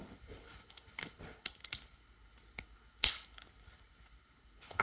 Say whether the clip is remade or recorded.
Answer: remade